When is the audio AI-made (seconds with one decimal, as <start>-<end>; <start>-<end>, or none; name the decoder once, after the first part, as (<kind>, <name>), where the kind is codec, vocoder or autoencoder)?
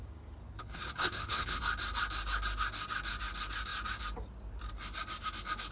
0.6-1.6 (codec, HILCodec)